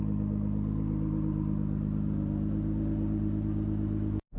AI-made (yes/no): no